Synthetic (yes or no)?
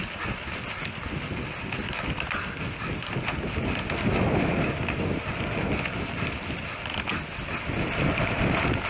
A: no